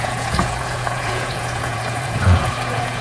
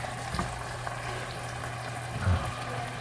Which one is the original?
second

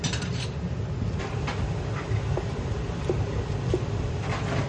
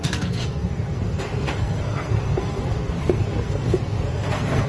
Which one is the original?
first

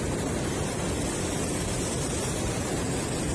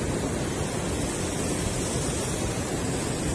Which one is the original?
second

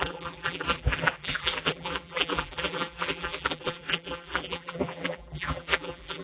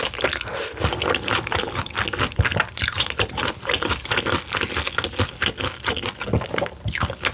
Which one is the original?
second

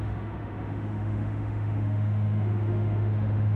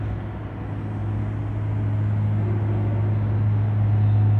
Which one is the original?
second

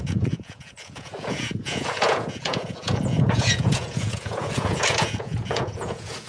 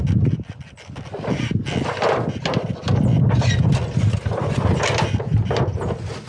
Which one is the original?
second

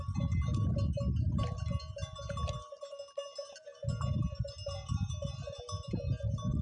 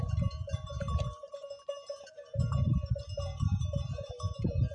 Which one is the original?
first